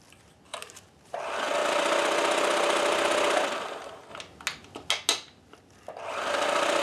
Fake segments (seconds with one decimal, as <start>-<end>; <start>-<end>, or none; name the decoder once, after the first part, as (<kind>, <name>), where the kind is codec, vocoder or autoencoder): 0.5-1.2 (vocoder, BigVGAN v2)